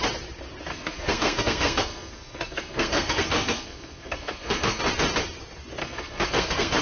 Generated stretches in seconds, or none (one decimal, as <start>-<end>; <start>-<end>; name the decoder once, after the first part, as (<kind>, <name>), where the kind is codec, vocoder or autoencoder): 0.7-4.8 (codec, SNAC); 5.8-6.8